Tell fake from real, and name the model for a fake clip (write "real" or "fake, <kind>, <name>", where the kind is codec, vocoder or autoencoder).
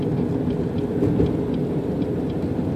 real